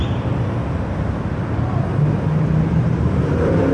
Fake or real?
real